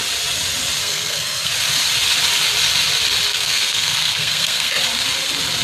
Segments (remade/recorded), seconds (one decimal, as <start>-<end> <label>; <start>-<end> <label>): 0.0-0.8 recorded; 0.8-1.5 remade; 1.5-3.3 recorded; 3.3-4.8 remade; 4.8-5.6 recorded